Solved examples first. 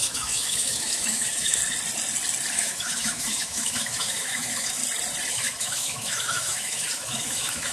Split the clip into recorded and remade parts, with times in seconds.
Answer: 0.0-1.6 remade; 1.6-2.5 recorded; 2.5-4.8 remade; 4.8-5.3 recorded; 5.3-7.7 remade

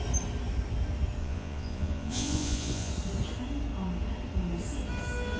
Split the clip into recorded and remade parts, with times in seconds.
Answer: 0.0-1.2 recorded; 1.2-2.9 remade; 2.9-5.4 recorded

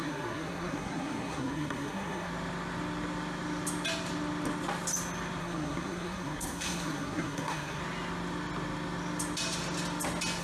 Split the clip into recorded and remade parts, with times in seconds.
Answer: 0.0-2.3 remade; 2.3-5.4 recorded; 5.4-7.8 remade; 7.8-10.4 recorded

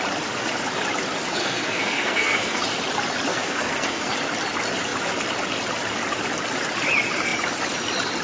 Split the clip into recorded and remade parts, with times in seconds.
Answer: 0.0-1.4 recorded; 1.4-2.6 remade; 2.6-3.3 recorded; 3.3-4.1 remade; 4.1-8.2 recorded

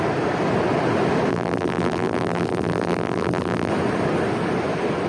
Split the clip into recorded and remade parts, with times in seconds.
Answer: 0.0-1.3 recorded; 1.3-3.7 remade; 3.7-5.1 recorded